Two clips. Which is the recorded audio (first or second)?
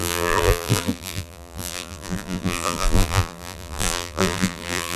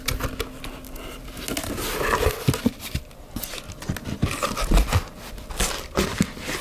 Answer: second